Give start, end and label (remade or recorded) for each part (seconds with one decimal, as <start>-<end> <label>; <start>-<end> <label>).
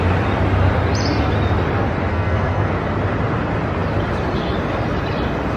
0.0-2.1 recorded; 2.1-2.7 remade; 2.7-5.6 recorded